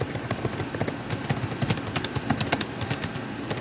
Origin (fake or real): real